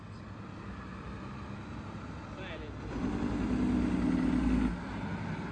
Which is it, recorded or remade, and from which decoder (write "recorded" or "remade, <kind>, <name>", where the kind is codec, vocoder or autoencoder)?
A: recorded